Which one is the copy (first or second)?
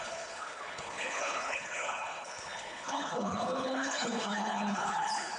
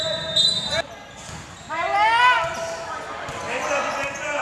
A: first